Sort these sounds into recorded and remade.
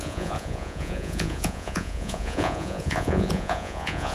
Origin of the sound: remade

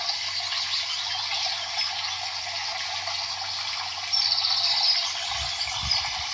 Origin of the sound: recorded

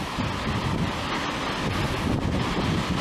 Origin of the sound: recorded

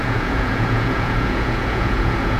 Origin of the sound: remade